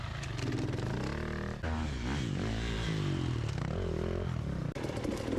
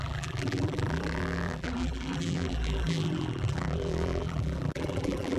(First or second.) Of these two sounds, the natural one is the first